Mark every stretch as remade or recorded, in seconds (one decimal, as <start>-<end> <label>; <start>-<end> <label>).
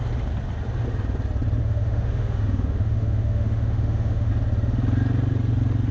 0.0-1.6 recorded; 1.6-4.3 remade; 4.3-5.9 recorded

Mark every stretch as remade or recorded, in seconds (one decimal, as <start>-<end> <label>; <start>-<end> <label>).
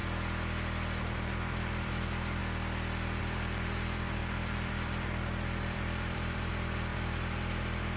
0.0-1.0 recorded; 1.0-2.4 remade; 2.4-3.2 recorded; 3.2-8.0 remade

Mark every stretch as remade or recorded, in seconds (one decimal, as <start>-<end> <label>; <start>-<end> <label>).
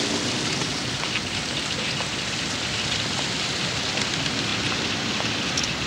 0.0-5.9 recorded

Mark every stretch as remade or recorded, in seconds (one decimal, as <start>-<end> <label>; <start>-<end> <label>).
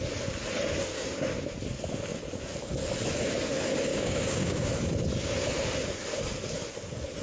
0.0-3.9 recorded; 3.9-4.7 remade; 4.7-7.2 recorded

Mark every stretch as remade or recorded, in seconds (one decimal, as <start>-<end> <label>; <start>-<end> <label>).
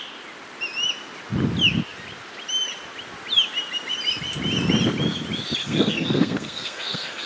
0.0-5.6 recorded; 5.6-7.3 remade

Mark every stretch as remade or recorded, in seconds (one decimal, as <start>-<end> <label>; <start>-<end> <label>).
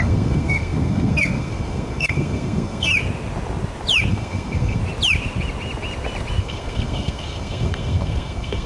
0.0-2.9 remade; 2.9-4.1 recorded; 4.1-4.8 remade; 4.8-6.4 recorded; 6.4-8.7 remade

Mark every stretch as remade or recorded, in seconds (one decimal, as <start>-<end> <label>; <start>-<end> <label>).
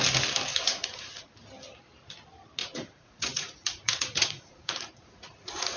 0.0-0.5 recorded; 0.5-1.3 remade; 1.3-2.6 recorded; 2.6-5.8 remade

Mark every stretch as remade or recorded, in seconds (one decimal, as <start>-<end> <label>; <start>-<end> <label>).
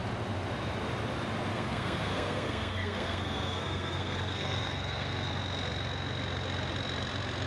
0.0-1.5 recorded; 1.5-5.3 remade; 5.3-7.5 recorded